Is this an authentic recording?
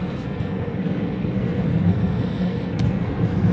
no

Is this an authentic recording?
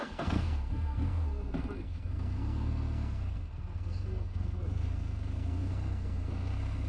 no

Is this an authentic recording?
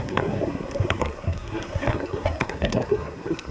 no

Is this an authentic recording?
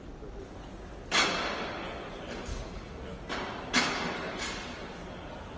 yes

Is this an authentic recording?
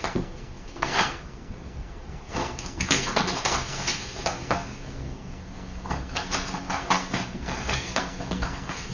no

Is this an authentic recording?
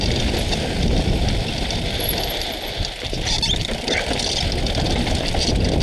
yes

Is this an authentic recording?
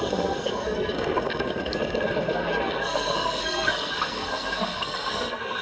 no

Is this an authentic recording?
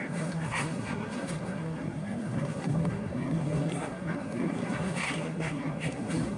no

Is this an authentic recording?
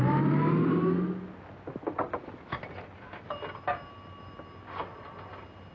yes